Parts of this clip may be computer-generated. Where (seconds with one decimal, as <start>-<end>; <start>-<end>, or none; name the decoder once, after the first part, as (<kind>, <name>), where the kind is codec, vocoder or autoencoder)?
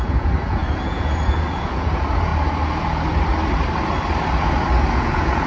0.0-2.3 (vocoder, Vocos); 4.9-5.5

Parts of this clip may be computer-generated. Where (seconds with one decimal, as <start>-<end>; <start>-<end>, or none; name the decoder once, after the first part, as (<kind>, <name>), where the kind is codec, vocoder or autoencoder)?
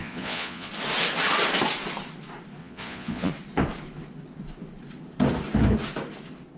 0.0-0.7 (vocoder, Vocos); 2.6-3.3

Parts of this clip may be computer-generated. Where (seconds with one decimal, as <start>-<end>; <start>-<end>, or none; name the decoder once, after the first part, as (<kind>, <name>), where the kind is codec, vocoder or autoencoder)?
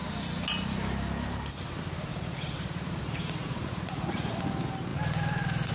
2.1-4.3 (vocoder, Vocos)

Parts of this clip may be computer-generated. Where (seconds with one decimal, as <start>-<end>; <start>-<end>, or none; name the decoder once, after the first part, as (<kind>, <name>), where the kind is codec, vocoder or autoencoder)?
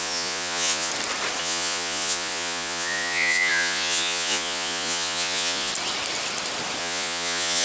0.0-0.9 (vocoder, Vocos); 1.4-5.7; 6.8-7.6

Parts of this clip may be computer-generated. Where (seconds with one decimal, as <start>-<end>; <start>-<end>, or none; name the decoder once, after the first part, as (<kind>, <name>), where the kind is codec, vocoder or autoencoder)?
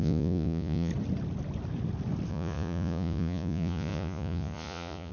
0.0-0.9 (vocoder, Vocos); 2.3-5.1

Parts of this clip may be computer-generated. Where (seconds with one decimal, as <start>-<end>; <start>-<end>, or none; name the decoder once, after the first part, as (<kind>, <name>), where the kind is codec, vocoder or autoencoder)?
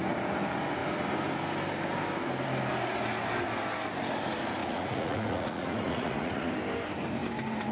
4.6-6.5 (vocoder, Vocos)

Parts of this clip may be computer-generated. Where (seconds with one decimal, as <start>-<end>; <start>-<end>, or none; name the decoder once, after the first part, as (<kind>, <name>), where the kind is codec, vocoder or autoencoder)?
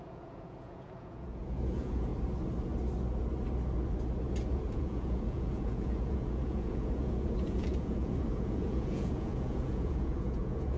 0.0-2.1 (vocoder, Vocos); 4.3-10.8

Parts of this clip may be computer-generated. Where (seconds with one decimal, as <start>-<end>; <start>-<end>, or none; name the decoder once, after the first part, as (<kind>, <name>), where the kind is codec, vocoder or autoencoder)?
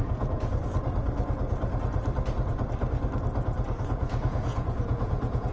0.0-0.5 (vocoder, Vocos); 3.8-5.5